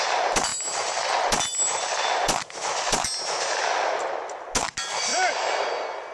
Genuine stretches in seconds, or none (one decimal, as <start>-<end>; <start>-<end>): 0.0-6.1